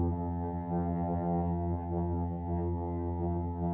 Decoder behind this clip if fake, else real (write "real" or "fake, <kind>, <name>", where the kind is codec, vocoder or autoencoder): fake, vocoder, HiFi-GAN